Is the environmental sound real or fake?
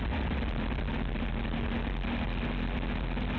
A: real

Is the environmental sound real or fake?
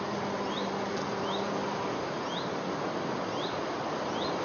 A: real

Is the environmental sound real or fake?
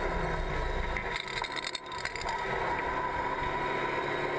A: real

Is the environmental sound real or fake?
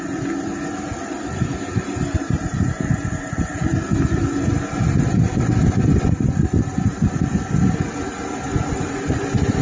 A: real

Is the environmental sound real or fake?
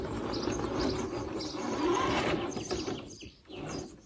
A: real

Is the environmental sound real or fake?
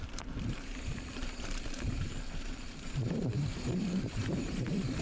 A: fake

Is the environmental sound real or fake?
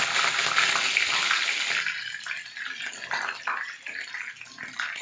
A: real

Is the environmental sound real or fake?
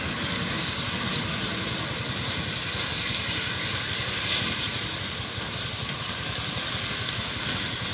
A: real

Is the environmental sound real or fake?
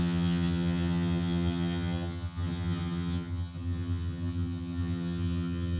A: fake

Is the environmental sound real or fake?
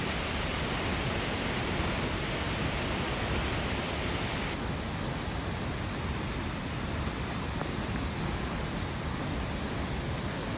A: real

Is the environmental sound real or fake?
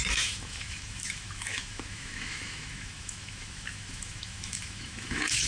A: fake